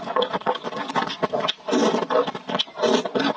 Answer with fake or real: real